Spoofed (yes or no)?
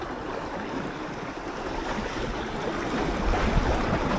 no